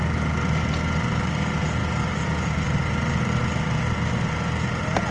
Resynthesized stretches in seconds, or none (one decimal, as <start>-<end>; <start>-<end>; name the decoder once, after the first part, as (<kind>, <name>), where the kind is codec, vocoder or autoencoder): 1.8-3.4 (vocoder, BigVGAN v2)